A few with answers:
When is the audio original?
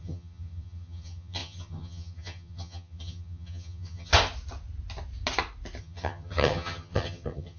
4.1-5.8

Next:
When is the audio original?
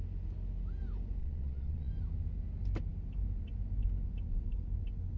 0.0-1.2; 1.9-5.2